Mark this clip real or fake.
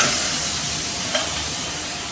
fake